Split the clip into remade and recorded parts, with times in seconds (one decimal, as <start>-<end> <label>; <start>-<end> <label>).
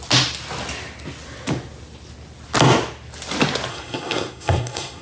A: 0.0-3.7 recorded; 3.7-5.0 remade